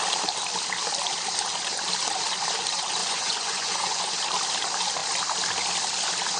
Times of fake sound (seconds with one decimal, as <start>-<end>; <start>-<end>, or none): 3.0-4.2